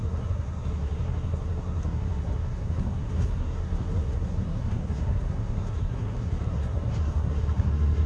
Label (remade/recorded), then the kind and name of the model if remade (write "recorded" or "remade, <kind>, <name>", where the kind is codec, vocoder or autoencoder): remade, codec, SNAC